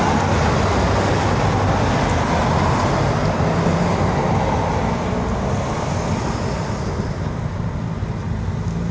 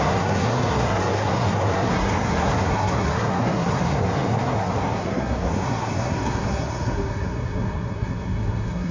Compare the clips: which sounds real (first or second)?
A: first